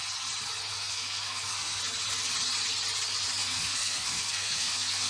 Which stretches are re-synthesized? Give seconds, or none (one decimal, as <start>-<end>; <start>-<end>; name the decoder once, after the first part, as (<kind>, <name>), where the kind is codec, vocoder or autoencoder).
0.7-1.8 (codec, SNAC); 3.4-5.1